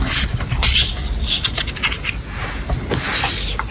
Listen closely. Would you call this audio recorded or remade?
recorded